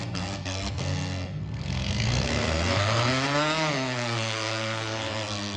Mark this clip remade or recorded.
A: remade